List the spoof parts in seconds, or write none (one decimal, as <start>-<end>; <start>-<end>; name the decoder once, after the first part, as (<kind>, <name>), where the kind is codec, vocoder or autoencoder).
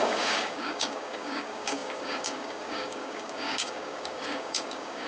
0.0-5.1 (codec, DAC)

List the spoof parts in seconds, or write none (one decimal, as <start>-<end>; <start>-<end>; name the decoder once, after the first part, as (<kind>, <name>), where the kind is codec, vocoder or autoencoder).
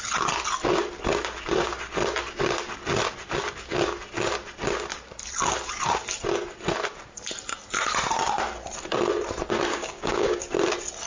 9.7-10.4 (codec, DAC)